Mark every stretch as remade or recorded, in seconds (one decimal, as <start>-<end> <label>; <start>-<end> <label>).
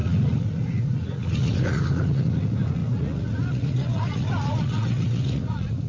0.0-5.9 remade